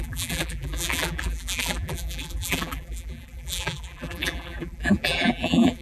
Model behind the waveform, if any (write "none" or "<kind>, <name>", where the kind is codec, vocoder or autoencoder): vocoder, BigVGAN v2